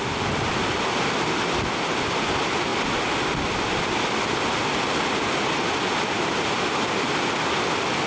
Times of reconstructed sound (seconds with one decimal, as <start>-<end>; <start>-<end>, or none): none